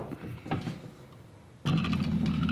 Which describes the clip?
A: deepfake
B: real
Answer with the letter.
B